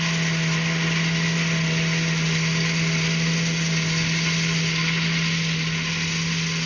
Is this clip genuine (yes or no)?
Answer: yes